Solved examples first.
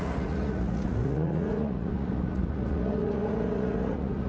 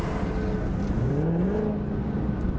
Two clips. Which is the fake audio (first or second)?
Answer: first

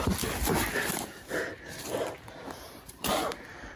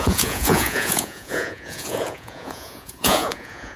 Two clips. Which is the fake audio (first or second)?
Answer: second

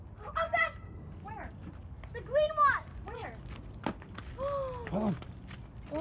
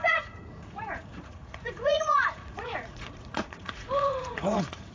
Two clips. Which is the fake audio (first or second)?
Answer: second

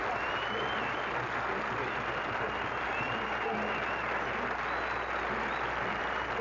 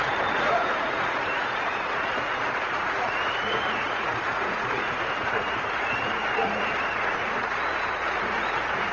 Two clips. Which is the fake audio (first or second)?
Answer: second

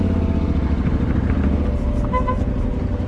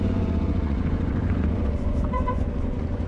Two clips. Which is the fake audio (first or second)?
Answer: second